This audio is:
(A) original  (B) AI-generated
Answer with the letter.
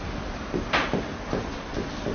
A